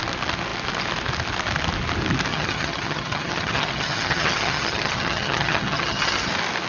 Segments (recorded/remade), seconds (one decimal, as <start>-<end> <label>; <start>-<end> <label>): 0.0-2.3 recorded; 2.3-6.3 remade; 6.3-6.7 recorded